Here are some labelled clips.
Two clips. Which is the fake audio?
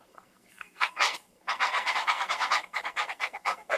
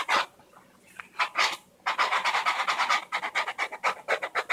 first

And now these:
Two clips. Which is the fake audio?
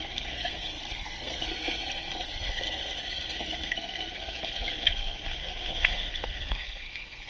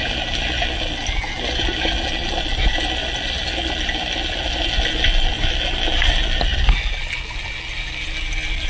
first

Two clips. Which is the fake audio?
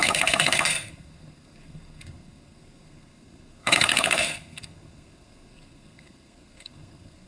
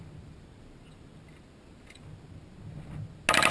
first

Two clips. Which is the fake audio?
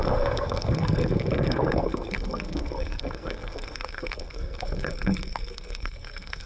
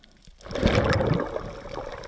first